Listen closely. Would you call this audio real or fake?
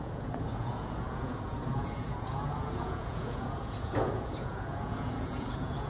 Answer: fake